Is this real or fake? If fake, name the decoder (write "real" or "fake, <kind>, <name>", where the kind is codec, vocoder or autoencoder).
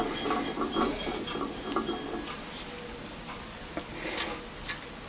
real